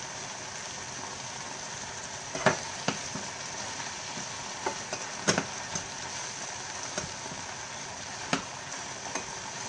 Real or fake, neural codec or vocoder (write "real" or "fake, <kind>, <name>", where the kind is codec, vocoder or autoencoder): real